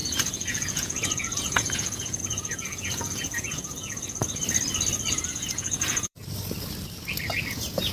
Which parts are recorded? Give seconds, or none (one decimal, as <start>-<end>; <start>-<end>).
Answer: 4.2-5.1; 6.2-7.5